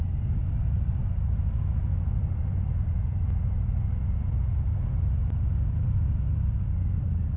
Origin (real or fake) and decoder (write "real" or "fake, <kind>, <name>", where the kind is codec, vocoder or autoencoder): fake, vocoder, BigVGAN v2